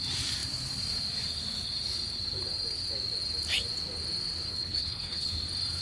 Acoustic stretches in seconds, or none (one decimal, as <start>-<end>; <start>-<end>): 0.0-4.5; 5.3-5.8